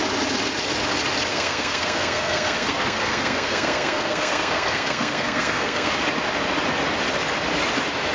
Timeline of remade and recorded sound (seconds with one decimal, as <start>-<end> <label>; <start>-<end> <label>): 0.0-1.3 recorded; 1.3-5.9 remade; 5.9-8.1 recorded